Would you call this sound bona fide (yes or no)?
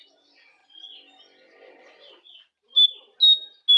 yes